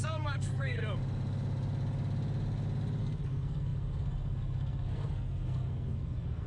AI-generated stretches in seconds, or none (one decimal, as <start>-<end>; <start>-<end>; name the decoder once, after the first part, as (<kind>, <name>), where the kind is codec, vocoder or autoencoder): 0.0-0.8 (codec, SNAC); 3.0-6.5